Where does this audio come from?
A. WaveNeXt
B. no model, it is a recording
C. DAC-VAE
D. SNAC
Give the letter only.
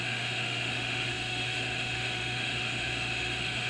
C